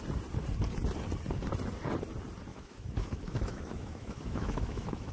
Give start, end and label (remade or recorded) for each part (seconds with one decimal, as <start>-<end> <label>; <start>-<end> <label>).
0.0-2.5 recorded; 2.5-5.1 remade